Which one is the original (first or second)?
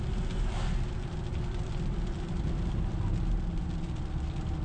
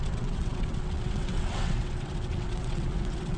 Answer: first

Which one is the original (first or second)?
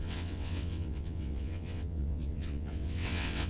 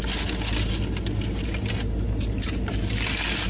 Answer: second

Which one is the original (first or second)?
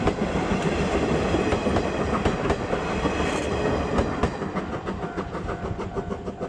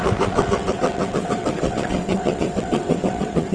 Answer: first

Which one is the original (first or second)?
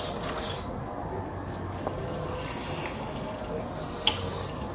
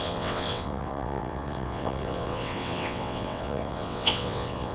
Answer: first